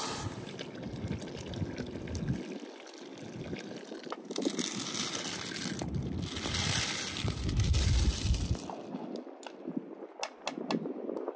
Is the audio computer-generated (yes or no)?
no